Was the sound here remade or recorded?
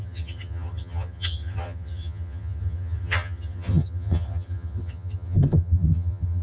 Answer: remade